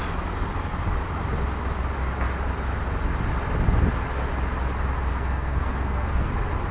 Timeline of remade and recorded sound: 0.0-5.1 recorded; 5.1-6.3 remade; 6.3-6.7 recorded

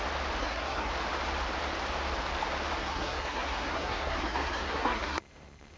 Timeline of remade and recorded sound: 0.0-0.4 recorded; 0.4-0.9 remade; 0.9-2.8 recorded; 2.8-5.2 remade; 5.2-5.8 recorded